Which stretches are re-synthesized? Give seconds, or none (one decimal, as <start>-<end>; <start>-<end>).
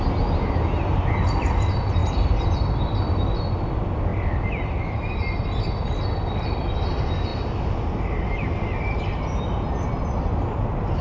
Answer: none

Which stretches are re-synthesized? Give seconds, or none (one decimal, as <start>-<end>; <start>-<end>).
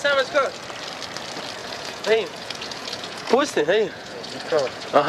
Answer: 1.6-5.1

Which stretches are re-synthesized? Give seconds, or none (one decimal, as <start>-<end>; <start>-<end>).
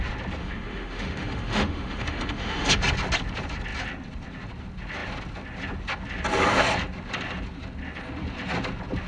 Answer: 0.4-2.8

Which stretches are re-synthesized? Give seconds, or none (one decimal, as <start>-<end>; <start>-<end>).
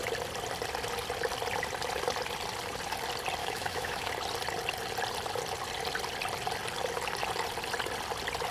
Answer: 3.4-4.1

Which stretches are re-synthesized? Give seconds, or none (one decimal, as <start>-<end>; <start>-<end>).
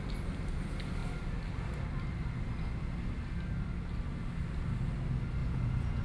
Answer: 5.4-6.0